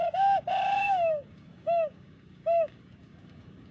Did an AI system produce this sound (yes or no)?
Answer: yes